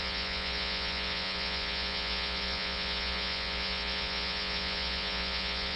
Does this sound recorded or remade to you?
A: remade